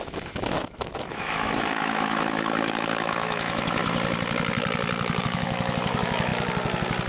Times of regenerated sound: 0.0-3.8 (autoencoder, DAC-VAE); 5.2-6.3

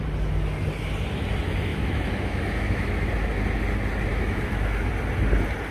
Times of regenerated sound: 1.7-3.1 (autoencoder, DAC-VAE); 4.1-4.9

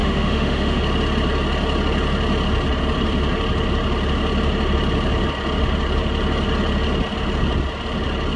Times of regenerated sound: 0.0-0.8 (autoencoder, DAC-VAE)

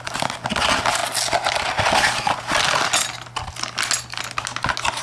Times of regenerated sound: none